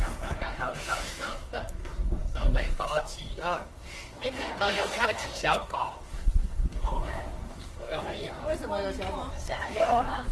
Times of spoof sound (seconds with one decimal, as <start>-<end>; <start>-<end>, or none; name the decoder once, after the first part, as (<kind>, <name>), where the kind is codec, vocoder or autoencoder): 0.0-8.4 (codec, SNAC); 9.3-10.3